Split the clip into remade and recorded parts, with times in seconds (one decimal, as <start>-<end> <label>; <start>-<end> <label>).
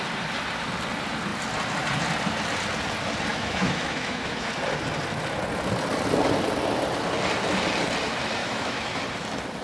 0.0-3.3 recorded; 3.3-4.5 remade; 4.5-8.4 recorded; 8.4-9.0 remade; 9.0-9.6 recorded